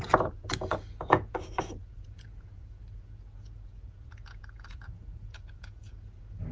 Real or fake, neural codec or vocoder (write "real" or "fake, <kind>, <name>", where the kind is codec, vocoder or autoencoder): fake, vocoder, Vocos